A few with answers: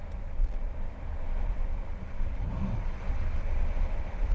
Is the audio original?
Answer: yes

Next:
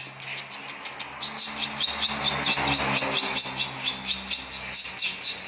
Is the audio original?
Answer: yes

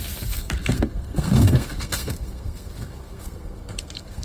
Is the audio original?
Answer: no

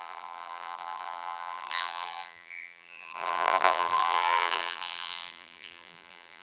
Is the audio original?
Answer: no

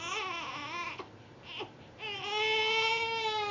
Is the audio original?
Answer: yes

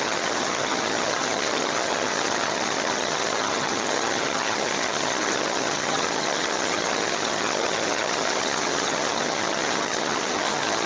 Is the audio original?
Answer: no